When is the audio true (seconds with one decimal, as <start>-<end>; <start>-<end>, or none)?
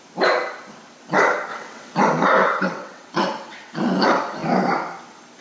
0.0-1.5; 2.0-2.4; 3.7-5.4